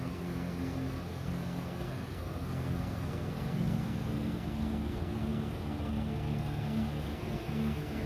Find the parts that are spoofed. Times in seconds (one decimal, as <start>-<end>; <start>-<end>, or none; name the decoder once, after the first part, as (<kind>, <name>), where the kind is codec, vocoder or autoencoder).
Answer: 0.0-8.1 (codec, SNAC)